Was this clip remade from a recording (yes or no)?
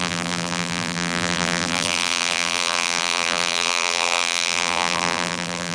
yes